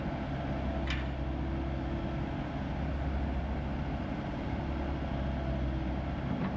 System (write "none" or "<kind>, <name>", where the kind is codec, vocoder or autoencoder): none